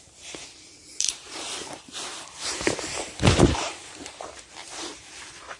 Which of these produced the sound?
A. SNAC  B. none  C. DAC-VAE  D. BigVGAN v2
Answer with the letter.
D